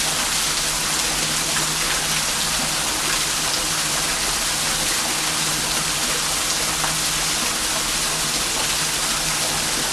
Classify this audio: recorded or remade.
recorded